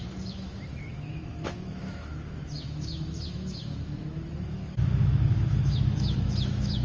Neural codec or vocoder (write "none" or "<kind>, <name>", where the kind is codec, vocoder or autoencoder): autoencoder, DAC-VAE